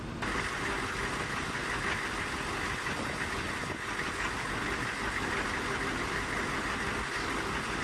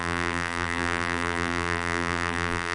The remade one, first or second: second